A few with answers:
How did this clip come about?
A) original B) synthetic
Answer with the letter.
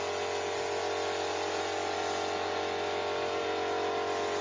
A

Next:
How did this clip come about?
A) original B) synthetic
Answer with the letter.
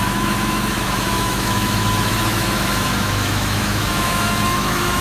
B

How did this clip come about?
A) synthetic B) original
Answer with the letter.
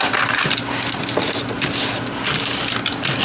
B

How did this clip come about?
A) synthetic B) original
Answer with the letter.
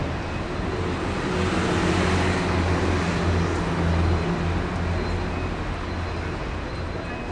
B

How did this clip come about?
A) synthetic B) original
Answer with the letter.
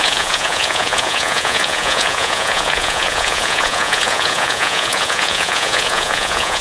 A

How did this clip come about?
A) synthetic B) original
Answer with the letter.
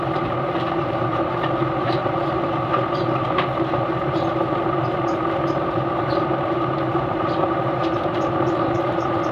A